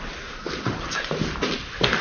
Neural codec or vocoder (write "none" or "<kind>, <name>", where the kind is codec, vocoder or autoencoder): none